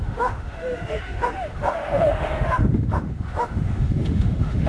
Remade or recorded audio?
remade